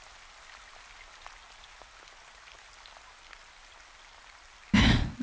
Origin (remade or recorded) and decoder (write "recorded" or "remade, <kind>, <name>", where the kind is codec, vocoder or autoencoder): recorded